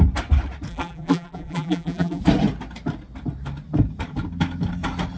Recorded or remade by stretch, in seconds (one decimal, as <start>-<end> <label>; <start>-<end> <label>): 0.0-0.7 recorded; 0.7-2.2 remade; 2.2-5.2 recorded